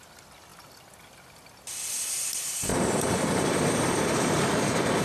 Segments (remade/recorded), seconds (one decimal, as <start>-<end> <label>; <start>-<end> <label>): 0.0-2.7 recorded; 2.7-4.4 remade; 4.4-5.0 recorded